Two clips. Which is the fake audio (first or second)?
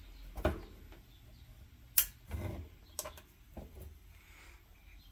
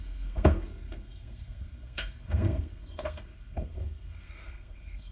second